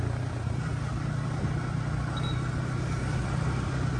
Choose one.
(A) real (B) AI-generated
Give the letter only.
A